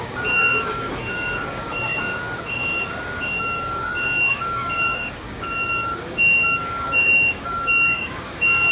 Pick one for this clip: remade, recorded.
remade